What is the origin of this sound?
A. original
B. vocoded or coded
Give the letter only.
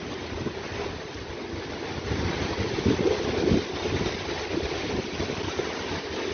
A